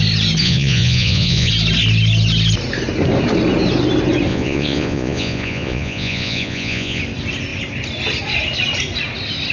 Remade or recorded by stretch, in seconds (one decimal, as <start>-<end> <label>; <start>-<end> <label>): 0.0-0.4 recorded; 0.4-1.5 remade; 1.5-4.3 recorded; 4.3-7.0 remade; 7.0-9.5 recorded